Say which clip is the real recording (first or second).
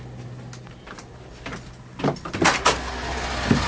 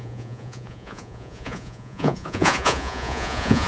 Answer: first